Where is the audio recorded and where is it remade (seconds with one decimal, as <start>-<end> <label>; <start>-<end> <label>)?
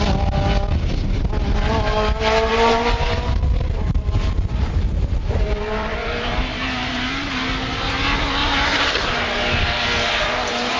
0.0-2.5 recorded; 2.5-6.3 remade; 6.3-8.4 recorded; 8.4-9.1 remade; 9.1-10.8 recorded